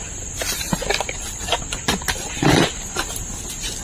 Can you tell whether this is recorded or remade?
remade